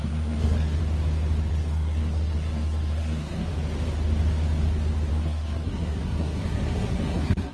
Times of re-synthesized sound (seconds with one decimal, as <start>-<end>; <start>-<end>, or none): 0.0-0.8; 1.5-3.5; 5.1-7.5